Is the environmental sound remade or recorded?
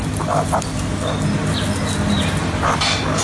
recorded